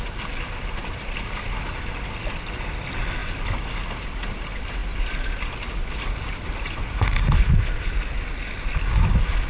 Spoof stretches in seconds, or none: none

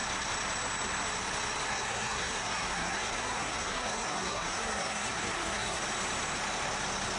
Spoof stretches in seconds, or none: 1.7-5.8